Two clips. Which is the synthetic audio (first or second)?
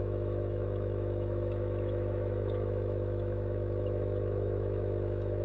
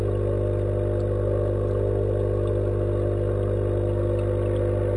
first